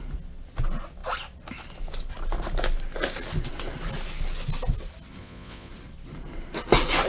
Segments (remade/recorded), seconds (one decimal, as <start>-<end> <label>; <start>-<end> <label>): 0.0-5.2 recorded; 5.2-5.7 remade; 5.7-7.1 recorded